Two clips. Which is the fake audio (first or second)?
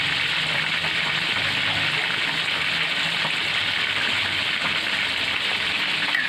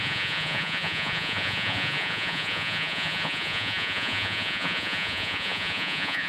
second